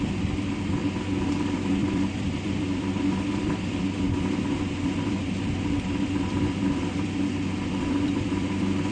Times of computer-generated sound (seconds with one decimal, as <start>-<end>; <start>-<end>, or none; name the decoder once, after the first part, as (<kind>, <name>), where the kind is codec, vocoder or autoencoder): 0.0-0.8 (vocoder, BigVGAN v2); 1.3-8.9